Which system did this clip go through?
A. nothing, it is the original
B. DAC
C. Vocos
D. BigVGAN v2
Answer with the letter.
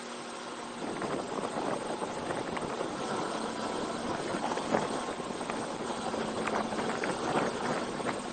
A